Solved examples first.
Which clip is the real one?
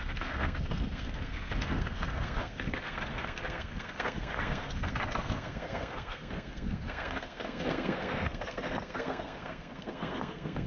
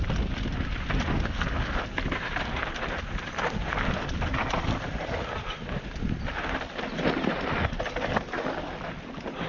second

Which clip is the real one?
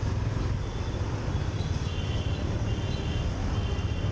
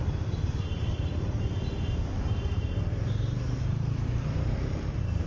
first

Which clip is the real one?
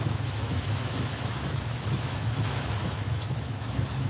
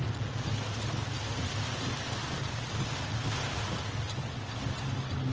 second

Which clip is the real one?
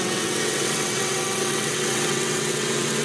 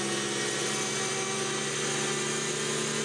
second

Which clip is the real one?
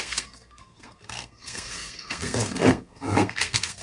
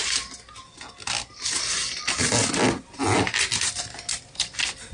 second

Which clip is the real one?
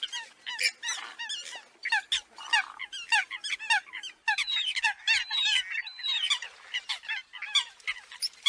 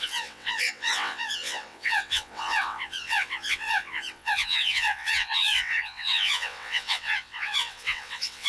first